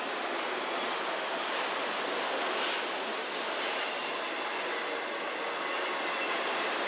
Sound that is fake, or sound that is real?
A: real